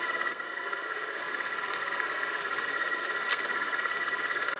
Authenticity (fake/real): fake